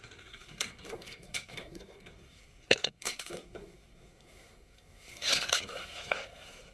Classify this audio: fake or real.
fake